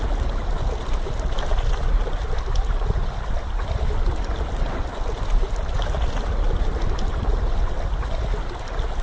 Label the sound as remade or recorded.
recorded